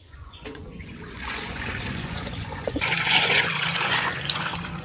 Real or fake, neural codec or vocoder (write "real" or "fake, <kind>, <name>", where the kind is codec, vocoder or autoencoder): fake, vocoder, Vocos